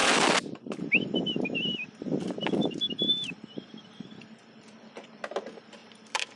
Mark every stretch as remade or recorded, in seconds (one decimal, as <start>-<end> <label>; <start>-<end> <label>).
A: 0.0-0.8 remade; 0.8-2.4 recorded; 2.4-2.9 remade; 2.9-5.8 recorded; 5.8-6.4 remade